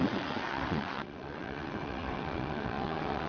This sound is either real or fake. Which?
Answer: fake